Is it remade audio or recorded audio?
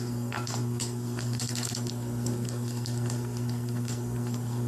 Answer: remade